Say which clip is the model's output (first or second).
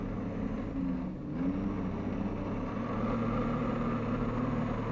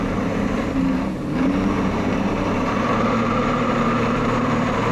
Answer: second